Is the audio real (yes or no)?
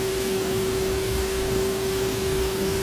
no